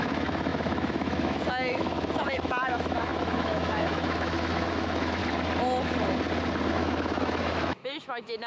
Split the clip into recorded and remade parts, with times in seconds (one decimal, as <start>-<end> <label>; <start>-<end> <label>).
0.0-5.2 remade; 5.2-6.7 recorded; 6.7-8.5 remade